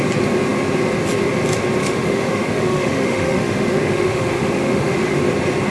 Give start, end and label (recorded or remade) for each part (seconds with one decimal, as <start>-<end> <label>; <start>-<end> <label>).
0.0-1.8 recorded; 1.8-5.2 remade; 5.2-5.7 recorded